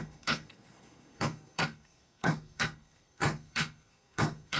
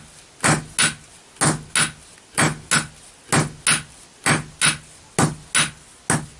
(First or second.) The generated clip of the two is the first